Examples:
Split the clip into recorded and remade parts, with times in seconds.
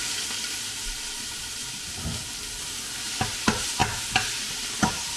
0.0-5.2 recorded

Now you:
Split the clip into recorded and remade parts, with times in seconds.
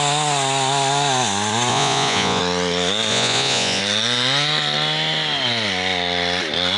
0.0-1.7 recorded; 1.7-2.4 remade; 2.4-3.1 recorded; 3.1-3.8 remade; 3.8-6.8 recorded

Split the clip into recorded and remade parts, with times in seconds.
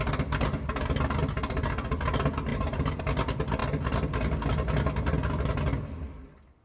0.0-2.5 recorded; 2.5-3.0 remade; 3.0-6.6 recorded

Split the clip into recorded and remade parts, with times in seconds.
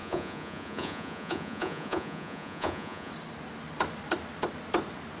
0.0-3.1 remade; 3.1-5.2 recorded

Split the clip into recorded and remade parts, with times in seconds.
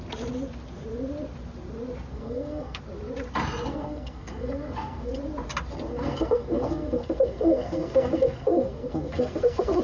0.0-2.1 recorded; 2.1-2.8 remade; 2.8-3.7 recorded; 3.7-5.1 remade; 5.1-5.9 recorded; 5.9-9.8 remade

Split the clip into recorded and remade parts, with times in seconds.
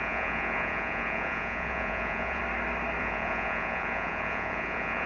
0.0-2.4 remade; 2.4-3.0 recorded; 3.0-5.1 remade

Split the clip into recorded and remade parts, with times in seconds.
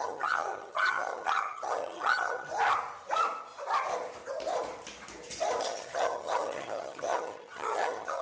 0.0-2.5 remade; 2.5-5.6 recorded; 5.6-8.2 remade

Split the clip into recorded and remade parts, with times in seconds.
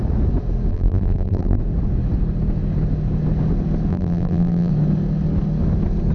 0.0-0.7 recorded; 0.7-1.6 remade; 1.6-3.9 recorded; 3.9-4.7 remade; 4.7-6.1 recorded